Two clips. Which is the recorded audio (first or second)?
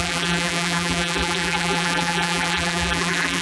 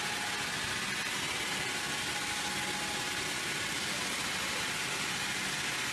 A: second